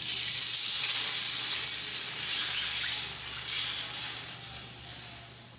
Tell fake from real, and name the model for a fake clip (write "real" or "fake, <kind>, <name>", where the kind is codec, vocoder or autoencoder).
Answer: real